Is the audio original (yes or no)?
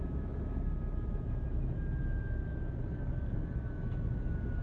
no